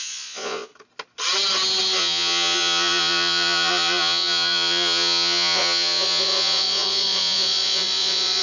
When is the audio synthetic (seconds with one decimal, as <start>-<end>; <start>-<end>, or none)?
0.0-0.7; 2.0-8.4